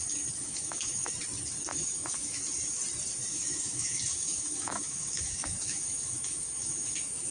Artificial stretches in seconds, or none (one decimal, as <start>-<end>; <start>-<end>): 0.4-1.1; 1.7-2.4; 3.3-7.3